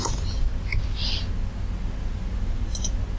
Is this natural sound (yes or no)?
yes